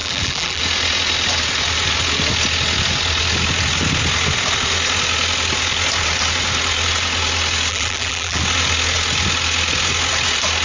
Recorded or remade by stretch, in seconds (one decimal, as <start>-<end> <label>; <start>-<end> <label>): 0.0-0.6 remade; 0.6-7.7 recorded; 7.7-8.4 remade; 8.4-10.6 recorded